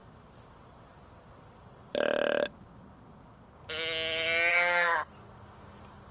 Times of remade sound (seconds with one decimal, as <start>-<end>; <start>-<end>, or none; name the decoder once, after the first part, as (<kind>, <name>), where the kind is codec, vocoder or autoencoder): 4.5-5.1 (codec, SNAC)